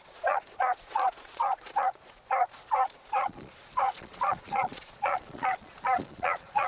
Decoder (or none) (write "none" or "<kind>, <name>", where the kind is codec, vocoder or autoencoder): vocoder, Vocos